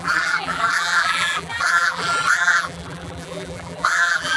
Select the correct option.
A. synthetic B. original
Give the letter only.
A